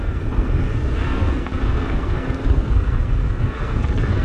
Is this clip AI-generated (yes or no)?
yes